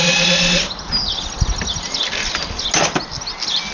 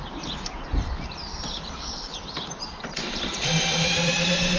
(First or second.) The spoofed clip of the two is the second